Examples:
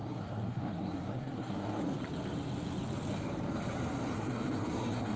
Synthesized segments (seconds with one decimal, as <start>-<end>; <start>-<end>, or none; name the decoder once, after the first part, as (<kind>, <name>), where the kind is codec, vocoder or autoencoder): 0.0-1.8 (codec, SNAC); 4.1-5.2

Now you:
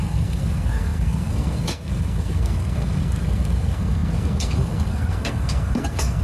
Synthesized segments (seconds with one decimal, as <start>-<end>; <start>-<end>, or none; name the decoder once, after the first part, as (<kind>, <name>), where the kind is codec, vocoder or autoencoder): 0.0-6.2 (codec, SNAC)

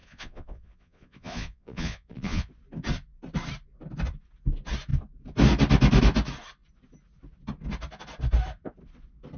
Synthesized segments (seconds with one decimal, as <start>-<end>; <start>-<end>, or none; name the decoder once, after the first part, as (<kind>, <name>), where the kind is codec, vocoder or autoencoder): 0.0-2.5 (vocoder, Vocos)

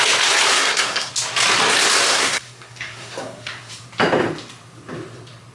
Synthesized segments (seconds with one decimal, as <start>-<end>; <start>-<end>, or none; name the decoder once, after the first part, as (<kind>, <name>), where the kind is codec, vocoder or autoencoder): 0.5-1.1 (codec, SNAC); 2.1-3.7

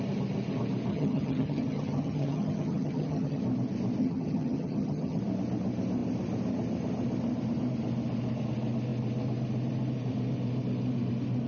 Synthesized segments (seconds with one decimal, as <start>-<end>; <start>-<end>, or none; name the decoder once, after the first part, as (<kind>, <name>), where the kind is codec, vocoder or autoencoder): 0.9-3.4 (vocoder, HiFi-GAN); 4.0-5.2

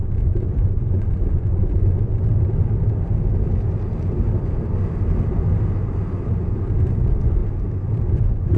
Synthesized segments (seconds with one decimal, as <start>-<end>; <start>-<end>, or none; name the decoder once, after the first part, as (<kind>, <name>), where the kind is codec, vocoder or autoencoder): 0.0-2.1 (vocoder, Vocos); 6.5-7.4; 8.1-8.6

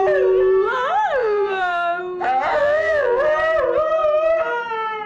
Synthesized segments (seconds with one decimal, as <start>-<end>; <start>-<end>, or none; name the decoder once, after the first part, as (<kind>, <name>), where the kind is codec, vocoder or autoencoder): 1.2-2.0 (vocoder, BigVGAN v2); 2.6-3.2